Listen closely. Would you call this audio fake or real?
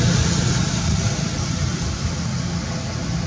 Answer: real